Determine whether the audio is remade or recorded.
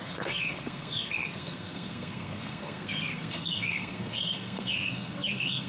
remade